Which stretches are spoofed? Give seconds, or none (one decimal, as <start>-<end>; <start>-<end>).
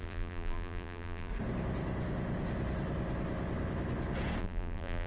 0.0-1.3; 4.4-5.1